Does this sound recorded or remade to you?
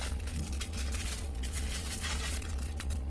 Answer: remade